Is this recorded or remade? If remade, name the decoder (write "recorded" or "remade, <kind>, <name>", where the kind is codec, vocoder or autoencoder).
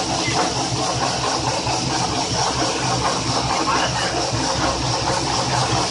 recorded